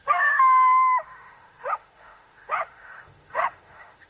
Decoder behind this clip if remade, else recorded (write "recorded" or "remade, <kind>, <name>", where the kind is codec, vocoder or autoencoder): remade, autoencoder, DAC-VAE